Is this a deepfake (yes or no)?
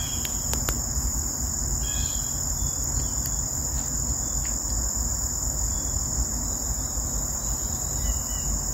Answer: no